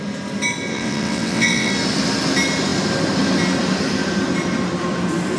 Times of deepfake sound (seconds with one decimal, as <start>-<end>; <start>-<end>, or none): 0.7-1.7

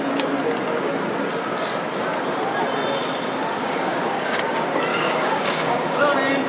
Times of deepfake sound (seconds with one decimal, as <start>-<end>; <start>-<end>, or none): 3.6-4.4; 4.9-6.0

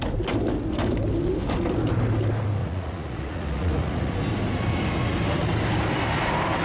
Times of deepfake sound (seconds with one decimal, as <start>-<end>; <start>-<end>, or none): 2.6-4.1

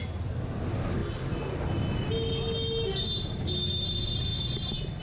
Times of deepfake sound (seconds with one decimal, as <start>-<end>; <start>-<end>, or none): none

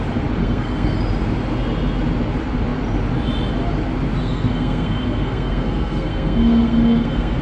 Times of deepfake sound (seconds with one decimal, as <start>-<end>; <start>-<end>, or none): 0.4-1.0; 4.2-7.4